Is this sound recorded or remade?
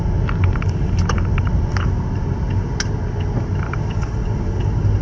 recorded